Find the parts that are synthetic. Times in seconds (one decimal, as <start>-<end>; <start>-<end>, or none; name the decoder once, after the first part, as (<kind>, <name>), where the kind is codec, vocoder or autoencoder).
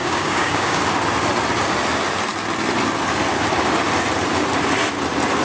0.0-0.8 (codec, DAC)